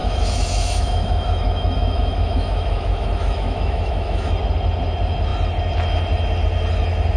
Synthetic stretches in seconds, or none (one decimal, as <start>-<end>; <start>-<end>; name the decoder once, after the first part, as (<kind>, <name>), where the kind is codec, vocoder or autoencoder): 0.0-4.3 (autoencoder, DAC-VAE)